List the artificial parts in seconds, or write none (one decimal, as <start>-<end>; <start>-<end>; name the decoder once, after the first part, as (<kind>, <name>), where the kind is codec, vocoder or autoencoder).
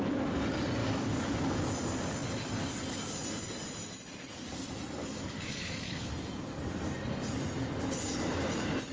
0.8-1.6 (codec, DAC); 5.0-6.1